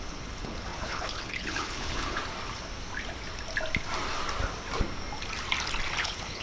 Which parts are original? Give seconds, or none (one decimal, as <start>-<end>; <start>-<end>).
2.2-6.0